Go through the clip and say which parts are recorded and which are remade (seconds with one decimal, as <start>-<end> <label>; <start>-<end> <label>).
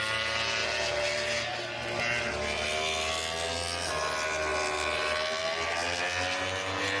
0.0-7.0 recorded